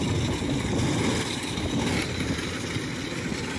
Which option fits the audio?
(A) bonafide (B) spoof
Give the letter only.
A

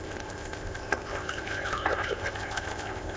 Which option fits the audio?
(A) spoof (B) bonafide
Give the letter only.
A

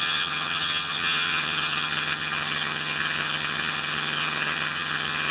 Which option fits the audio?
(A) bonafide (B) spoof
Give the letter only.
B